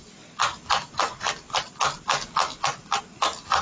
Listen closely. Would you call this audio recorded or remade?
recorded